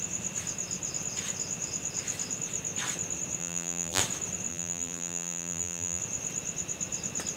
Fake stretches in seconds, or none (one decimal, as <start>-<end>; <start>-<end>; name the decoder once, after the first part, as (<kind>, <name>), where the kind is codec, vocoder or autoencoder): 3.4-4.0 (vocoder, BigVGAN v2); 4.5-6.0